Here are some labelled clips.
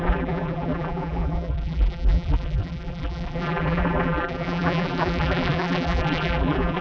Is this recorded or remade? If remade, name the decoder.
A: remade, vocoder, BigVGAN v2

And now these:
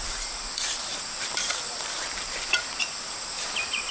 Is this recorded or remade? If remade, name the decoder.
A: remade, vocoder, BigVGAN v2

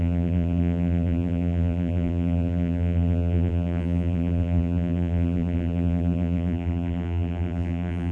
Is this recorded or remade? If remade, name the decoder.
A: remade, vocoder, BigVGAN v2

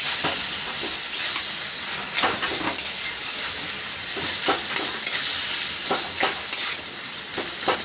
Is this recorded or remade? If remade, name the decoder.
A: remade, vocoder, BigVGAN v2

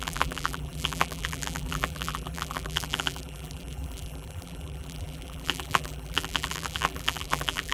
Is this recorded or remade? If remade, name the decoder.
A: remade, vocoder, BigVGAN v2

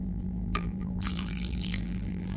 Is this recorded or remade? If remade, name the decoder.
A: remade, vocoder, BigVGAN v2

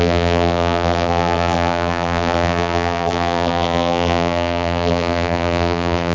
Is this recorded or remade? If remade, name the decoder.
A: remade, vocoder, BigVGAN v2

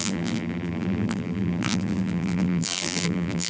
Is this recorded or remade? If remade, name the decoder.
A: remade, vocoder, BigVGAN v2